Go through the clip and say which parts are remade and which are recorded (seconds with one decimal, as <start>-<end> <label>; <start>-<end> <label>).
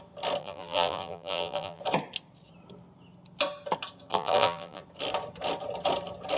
0.0-0.4 recorded; 0.4-1.8 remade; 1.8-4.1 recorded; 4.1-4.8 remade; 4.8-6.4 recorded